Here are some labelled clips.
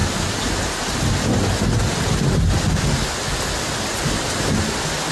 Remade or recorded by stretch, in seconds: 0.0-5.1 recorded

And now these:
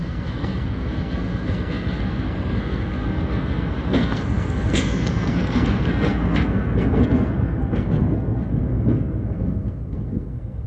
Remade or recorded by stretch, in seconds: 0.0-10.7 remade